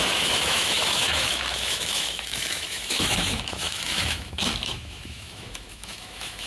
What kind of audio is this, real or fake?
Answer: fake